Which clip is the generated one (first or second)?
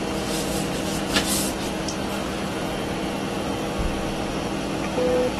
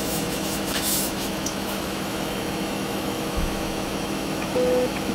second